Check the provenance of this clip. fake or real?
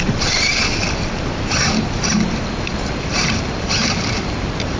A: real